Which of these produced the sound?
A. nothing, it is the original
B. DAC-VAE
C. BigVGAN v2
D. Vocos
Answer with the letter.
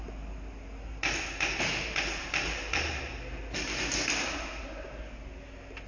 A